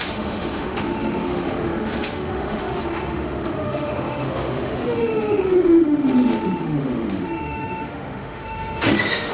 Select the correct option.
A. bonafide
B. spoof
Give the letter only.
B